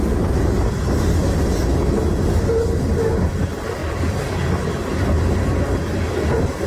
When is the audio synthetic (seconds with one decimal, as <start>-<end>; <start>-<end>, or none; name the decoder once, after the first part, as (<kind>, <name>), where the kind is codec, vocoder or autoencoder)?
3.8-4.4 (vocoder, BigVGAN v2)